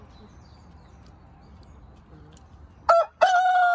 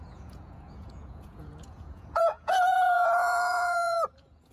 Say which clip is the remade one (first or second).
second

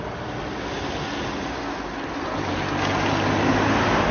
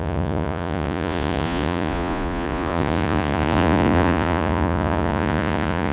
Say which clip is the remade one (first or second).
second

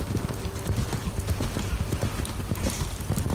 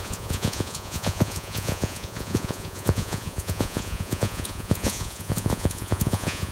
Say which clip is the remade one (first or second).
second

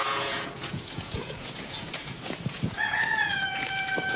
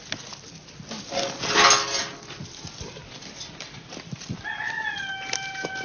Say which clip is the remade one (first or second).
first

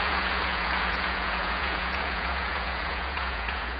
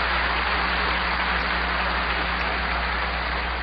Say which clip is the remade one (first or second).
first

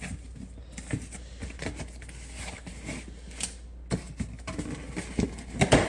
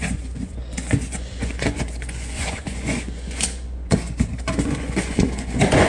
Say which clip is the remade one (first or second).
second